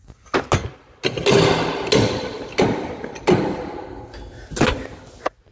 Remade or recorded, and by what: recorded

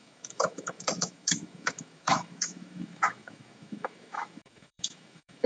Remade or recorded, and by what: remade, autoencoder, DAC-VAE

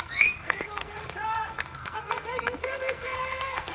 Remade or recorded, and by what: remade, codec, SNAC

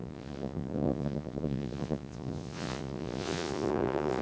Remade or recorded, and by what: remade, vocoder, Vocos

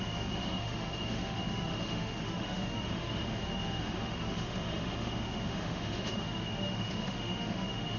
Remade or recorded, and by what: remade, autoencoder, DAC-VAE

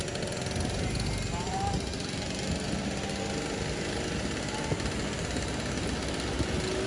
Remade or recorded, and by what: recorded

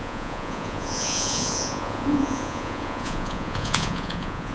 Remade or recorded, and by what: remade, vocoder, Vocos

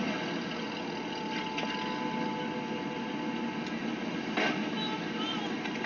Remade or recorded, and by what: recorded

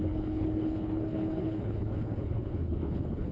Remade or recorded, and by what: remade, codec, HILCodec